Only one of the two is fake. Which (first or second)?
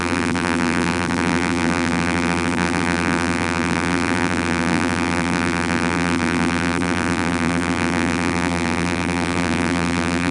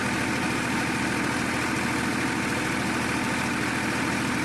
first